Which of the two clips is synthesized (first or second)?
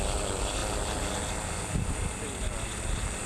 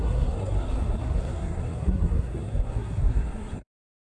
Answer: second